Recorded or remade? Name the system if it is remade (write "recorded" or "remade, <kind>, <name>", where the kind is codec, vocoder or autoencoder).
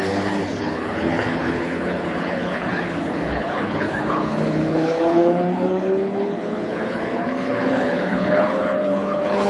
remade, codec, HILCodec